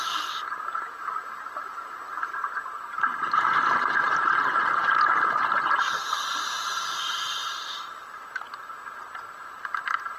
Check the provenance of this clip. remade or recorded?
remade